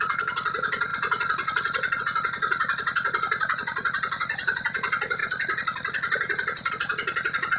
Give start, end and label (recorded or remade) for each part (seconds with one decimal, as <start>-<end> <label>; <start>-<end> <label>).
0.0-7.6 recorded